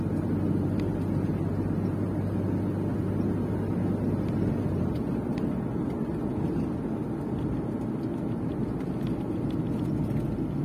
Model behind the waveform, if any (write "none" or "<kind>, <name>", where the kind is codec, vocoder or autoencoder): none